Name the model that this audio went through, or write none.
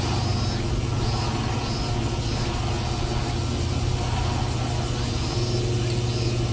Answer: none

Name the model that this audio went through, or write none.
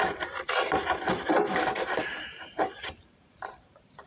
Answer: vocoder, BigVGAN v2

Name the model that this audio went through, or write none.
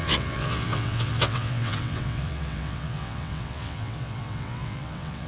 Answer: vocoder, WaveNeXt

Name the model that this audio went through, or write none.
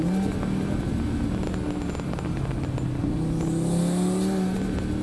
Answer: none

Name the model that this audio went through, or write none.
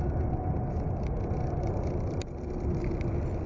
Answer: none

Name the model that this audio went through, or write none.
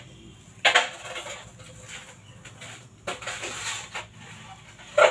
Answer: none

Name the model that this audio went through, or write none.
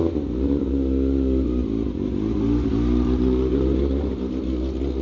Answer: none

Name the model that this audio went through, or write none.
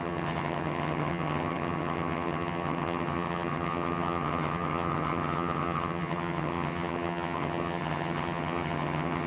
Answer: vocoder, HiFi-GAN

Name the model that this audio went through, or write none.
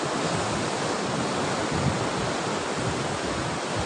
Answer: none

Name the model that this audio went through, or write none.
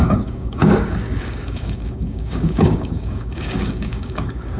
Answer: codec, DAC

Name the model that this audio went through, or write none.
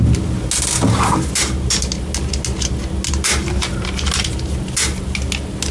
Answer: none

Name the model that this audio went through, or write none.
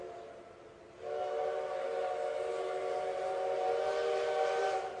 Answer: none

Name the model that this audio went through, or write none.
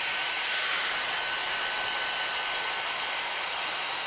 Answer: none